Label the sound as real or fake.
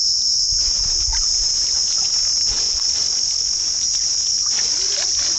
real